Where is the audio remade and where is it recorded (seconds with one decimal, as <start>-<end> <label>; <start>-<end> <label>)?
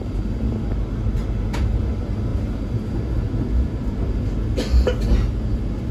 0.0-5.9 recorded